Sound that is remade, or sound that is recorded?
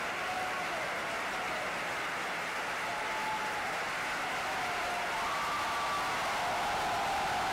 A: recorded